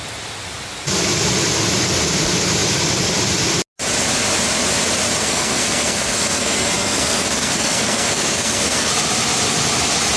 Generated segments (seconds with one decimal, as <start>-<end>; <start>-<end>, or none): 5.2-8.9

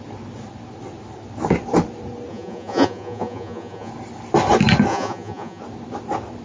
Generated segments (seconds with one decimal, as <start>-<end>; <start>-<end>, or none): 2.3-3.9; 4.9-5.6

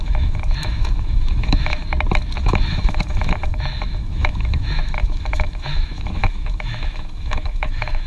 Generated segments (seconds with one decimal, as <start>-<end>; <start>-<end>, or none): 0.0-1.8; 2.4-8.1

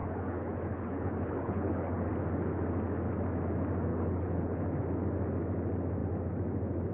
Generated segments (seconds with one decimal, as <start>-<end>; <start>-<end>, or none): 0.0-2.1; 3.9-4.8

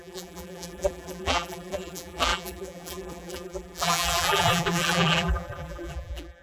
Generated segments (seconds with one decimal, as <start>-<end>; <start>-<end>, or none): 0.0-6.4

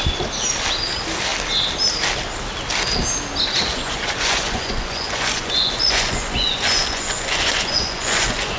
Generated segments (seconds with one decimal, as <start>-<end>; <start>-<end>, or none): 3.7-8.6

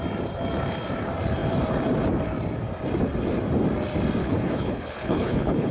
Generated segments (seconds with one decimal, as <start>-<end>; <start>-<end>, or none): 4.2-5.7

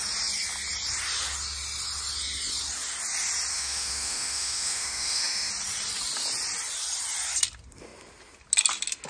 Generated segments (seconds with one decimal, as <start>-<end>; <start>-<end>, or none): 3.5-5.5